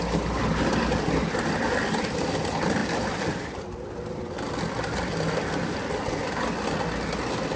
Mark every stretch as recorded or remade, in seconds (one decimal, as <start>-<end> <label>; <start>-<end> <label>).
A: 0.0-7.6 recorded